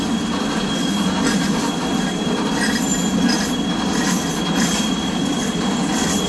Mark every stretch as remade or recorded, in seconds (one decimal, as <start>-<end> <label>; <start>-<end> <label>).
0.0-6.3 recorded